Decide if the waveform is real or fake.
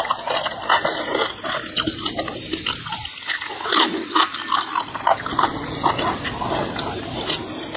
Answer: real